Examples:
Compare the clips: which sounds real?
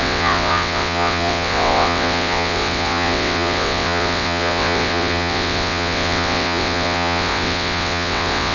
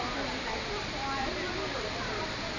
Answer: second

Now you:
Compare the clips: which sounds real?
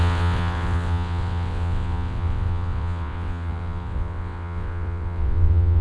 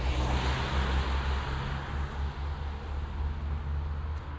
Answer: second